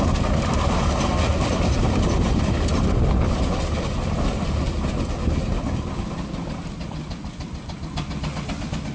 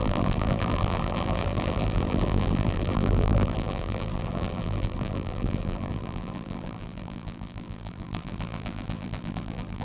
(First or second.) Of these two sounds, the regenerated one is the second